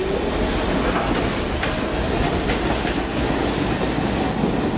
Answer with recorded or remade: recorded